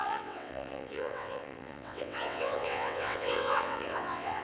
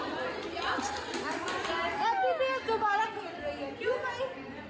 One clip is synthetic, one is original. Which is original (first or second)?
second